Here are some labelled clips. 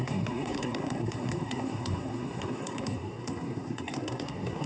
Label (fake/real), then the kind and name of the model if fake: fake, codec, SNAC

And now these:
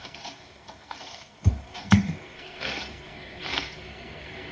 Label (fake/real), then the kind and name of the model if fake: fake, codec, SNAC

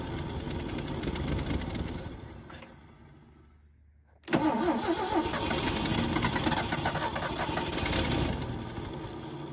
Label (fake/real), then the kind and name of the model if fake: real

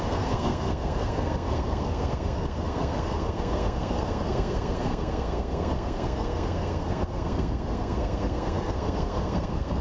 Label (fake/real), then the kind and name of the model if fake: fake, codec, SNAC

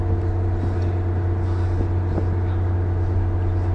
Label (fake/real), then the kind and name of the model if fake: real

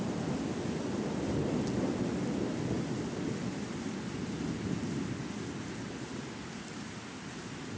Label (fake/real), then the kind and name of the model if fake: real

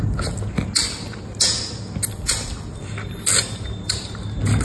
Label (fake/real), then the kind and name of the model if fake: real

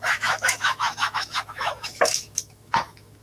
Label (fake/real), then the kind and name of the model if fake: fake, autoencoder, DAC-VAE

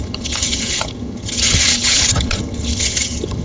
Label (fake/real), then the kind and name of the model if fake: fake, vocoder, HiFi-GAN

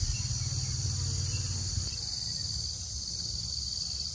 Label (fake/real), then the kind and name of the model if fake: real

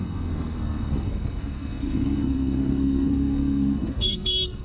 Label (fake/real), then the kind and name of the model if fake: fake, codec, SNAC